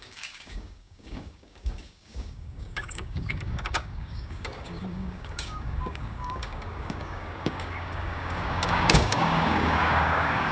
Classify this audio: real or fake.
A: fake